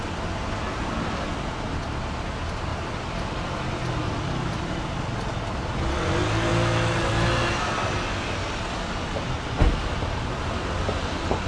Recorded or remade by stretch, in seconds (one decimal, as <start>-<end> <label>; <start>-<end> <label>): 0.0-11.5 recorded